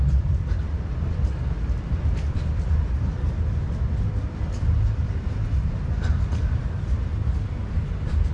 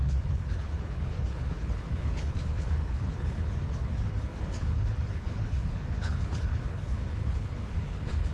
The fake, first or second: second